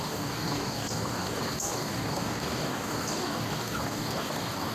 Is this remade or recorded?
remade